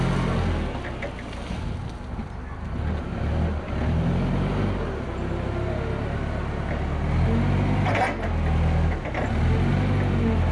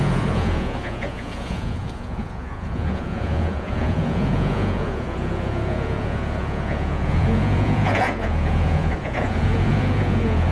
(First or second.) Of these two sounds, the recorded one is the first